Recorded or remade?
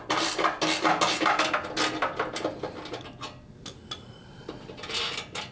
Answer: recorded